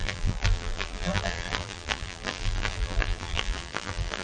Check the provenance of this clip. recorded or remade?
remade